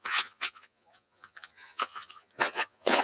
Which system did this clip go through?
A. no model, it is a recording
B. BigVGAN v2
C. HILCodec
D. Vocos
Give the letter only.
D